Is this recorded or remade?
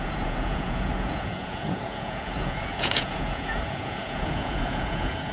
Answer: remade